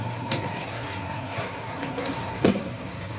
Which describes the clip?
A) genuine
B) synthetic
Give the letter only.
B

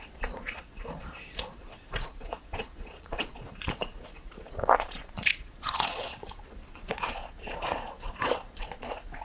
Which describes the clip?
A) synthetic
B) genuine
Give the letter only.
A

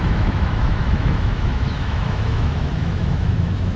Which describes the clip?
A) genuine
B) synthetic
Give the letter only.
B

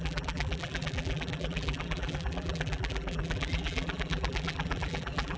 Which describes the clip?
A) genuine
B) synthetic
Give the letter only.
B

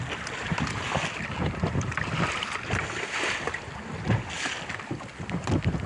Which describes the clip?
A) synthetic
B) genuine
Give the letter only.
B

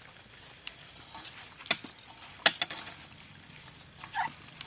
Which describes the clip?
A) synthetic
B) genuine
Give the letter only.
B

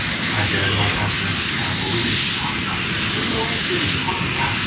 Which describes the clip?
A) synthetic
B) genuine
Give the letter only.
B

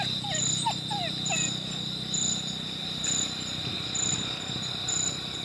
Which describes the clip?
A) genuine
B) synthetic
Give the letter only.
A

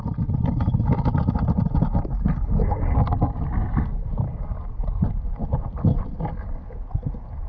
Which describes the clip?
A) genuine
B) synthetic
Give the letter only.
A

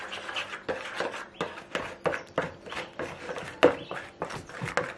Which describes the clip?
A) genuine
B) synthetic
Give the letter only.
A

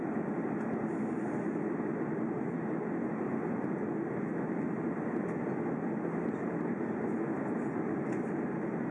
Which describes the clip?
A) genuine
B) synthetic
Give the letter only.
A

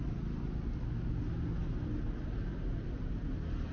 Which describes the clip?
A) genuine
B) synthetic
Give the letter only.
A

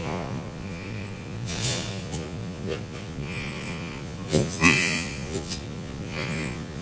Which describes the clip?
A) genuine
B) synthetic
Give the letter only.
B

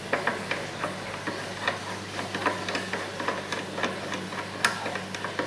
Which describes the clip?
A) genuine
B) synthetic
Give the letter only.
A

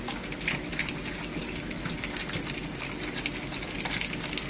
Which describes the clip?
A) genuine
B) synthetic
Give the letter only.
A